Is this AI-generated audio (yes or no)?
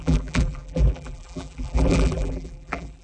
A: yes